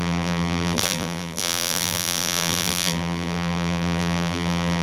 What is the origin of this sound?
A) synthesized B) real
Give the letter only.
A